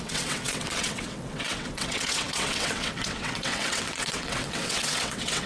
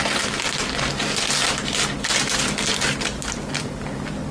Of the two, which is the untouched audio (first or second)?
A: second